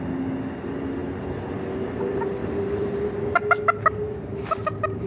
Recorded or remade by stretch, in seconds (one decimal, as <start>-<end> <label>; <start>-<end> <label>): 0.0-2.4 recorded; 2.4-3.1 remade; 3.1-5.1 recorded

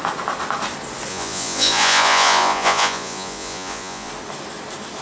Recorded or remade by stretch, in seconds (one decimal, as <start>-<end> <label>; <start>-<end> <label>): 0.0-1.1 recorded; 1.1-4.1 remade; 4.1-5.0 recorded

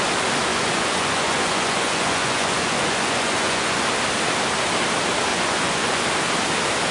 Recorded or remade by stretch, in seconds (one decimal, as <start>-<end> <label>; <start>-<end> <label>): 0.0-0.5 recorded; 0.5-3.8 remade; 3.8-5.3 recorded; 5.3-6.0 remade; 6.0-6.9 recorded